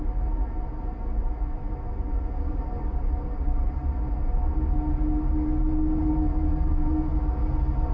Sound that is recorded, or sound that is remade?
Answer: recorded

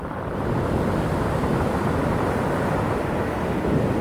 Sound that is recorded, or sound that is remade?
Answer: remade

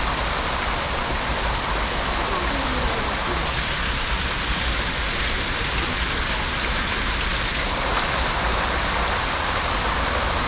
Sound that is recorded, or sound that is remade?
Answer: recorded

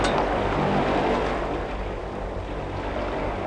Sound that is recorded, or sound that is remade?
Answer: recorded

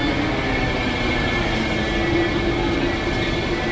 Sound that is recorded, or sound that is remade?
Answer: recorded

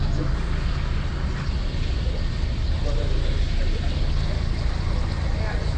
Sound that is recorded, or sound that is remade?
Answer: recorded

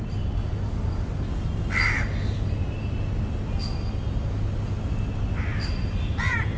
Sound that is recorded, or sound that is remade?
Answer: recorded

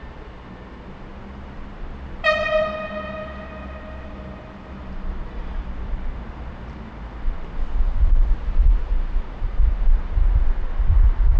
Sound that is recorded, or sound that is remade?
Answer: recorded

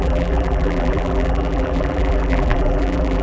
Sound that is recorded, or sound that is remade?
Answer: remade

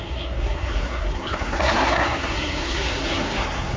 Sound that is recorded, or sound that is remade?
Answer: remade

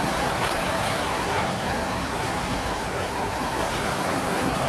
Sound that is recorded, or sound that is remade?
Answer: remade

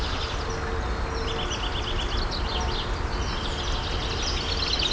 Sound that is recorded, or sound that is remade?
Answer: recorded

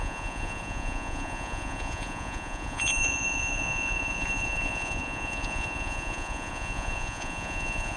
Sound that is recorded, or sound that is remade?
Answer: remade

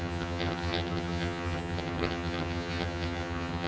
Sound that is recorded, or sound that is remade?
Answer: remade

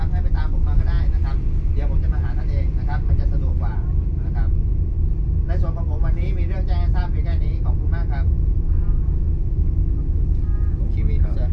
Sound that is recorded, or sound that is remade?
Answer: recorded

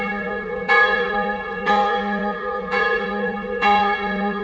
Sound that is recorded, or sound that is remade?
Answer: remade